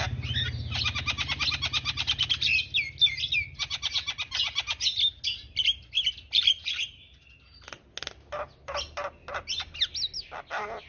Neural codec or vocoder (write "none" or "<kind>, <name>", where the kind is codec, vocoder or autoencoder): none